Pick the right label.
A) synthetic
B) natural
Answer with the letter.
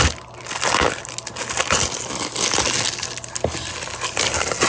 B